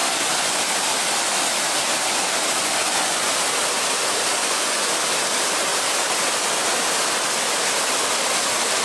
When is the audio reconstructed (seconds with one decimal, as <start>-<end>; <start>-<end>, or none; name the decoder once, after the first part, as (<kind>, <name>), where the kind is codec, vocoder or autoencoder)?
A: 0.0-0.6 (vocoder, Vocos); 2.6-3.3; 4.4-4.9